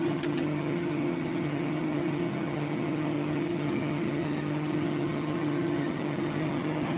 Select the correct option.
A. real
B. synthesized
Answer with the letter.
B